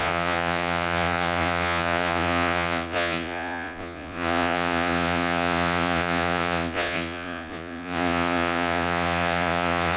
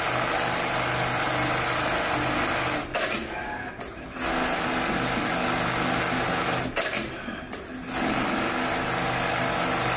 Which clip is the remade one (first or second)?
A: first